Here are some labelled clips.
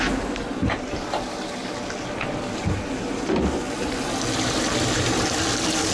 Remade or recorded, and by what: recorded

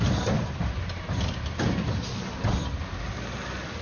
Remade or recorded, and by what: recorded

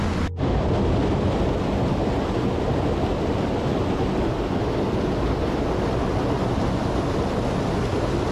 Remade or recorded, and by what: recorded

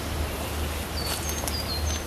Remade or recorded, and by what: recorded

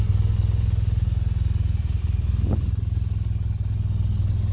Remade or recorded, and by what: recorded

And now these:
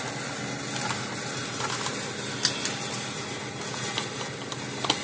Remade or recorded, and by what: recorded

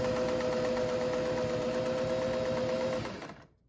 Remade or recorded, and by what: recorded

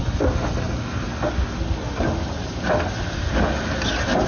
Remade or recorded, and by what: recorded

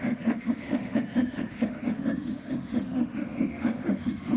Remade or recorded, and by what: remade, autoencoder, DAC-VAE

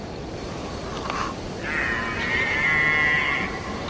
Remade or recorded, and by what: recorded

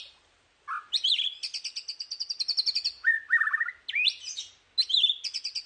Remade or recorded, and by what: recorded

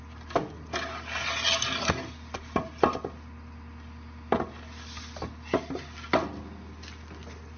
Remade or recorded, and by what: recorded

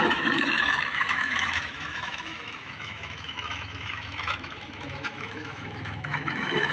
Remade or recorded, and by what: remade, autoencoder, DAC-VAE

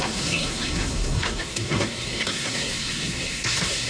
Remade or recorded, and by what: remade, codec, SNAC